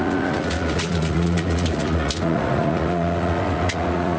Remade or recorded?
remade